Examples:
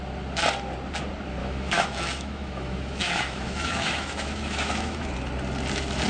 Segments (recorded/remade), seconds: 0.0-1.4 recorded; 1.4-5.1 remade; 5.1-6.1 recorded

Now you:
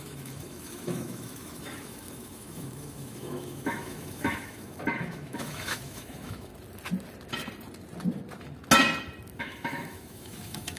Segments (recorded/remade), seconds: 0.0-6.5 remade; 6.5-9.4 recorded; 9.4-10.8 remade

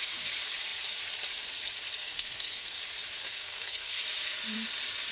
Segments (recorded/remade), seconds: 0.0-2.0 recorded; 2.0-2.8 remade; 2.8-3.2 recorded; 3.2-4.0 remade; 4.0-5.1 recorded

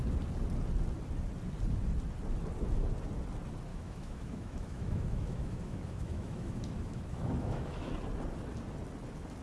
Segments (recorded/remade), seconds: 0.0-3.7 recorded; 3.7-7.9 remade; 7.9-9.4 recorded

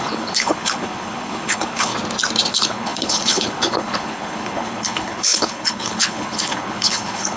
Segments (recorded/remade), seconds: 0.0-1.9 remade; 1.9-2.5 recorded; 2.5-7.4 remade

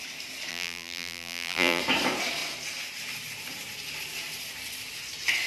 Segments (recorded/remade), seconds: 0.0-0.5 recorded; 0.5-1.8 remade; 1.8-5.5 recorded

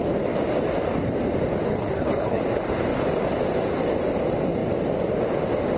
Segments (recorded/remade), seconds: 0.0-1.7 recorded; 1.7-2.4 remade; 2.4-5.8 recorded

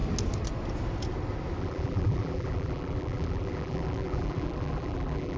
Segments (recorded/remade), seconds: 0.0-1.6 recorded; 1.6-5.4 remade